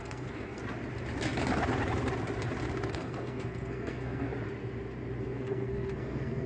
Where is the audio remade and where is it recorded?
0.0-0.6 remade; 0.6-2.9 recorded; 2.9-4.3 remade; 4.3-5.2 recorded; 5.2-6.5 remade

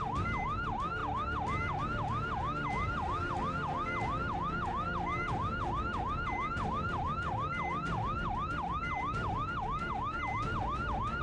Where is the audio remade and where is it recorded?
0.0-11.2 recorded

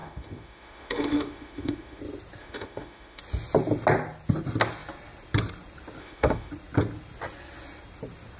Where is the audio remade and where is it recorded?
0.0-2.0 remade; 2.0-2.4 recorded; 2.4-3.2 remade; 3.2-6.0 recorded; 6.0-6.5 remade; 6.5-8.4 recorded

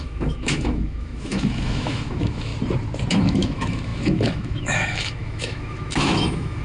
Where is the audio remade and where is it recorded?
0.0-2.5 remade; 2.5-3.1 recorded; 3.1-6.6 remade

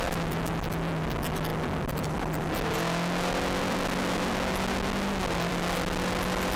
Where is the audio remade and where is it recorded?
0.0-6.6 recorded

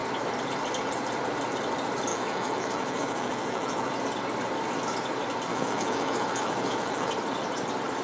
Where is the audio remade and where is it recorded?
0.0-2.1 recorded; 2.1-3.9 remade; 3.9-5.5 recorded; 5.5-7.1 remade; 7.1-8.0 recorded

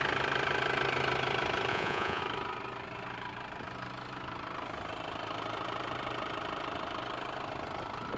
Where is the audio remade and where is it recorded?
0.0-1.7 recorded; 1.7-2.2 remade; 2.2-8.2 recorded

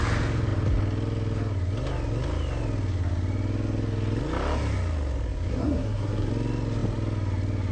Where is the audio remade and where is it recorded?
0.0-5.5 recorded; 5.5-6.3 remade; 6.3-7.7 recorded